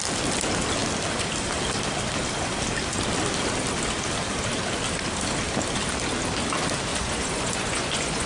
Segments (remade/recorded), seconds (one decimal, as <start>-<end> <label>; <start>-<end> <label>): 0.0-6.9 recorded; 6.9-8.3 remade